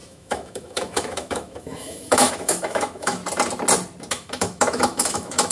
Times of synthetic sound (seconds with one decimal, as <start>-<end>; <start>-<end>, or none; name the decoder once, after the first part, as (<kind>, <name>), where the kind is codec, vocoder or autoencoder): 0.0-3.2 (autoencoder, DAC-VAE); 4.1-5.5